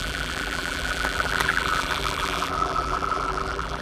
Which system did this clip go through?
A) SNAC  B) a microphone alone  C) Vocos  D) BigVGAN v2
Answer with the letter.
D